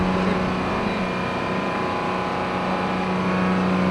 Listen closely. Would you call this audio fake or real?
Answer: real